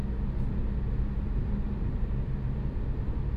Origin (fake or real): real